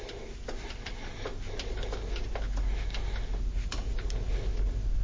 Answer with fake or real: real